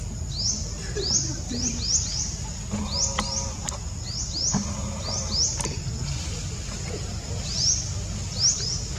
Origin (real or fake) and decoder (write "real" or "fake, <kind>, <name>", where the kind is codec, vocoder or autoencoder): real